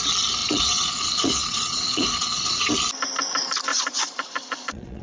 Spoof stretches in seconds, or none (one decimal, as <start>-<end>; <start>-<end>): 0.4-2.7; 3.7-5.0